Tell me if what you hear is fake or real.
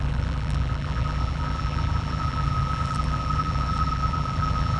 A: fake